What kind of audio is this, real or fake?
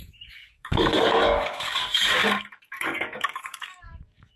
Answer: fake